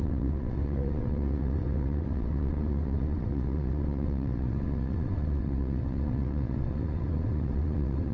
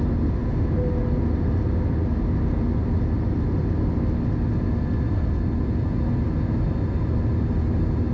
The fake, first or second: first